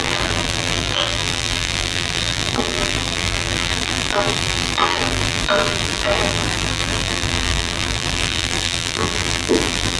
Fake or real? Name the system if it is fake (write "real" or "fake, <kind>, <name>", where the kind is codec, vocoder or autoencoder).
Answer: fake, vocoder, BigVGAN v2